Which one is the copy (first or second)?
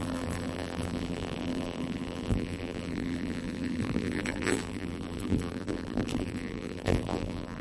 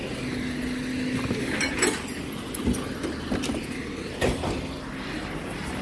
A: first